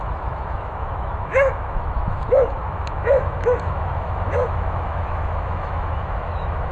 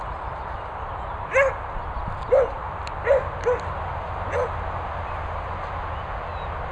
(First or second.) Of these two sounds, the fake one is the first